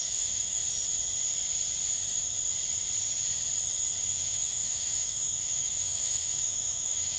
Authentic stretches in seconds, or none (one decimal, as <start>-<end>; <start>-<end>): 0.6-4.1